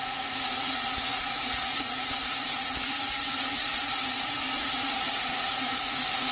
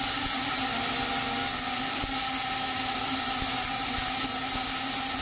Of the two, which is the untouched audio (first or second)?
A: second